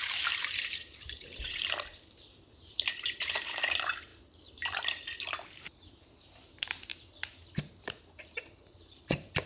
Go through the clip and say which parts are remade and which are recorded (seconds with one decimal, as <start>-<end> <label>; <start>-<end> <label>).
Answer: 0.0-4.1 remade; 4.1-5.5 recorded; 5.5-6.9 remade; 6.9-7.5 recorded; 7.5-9.5 remade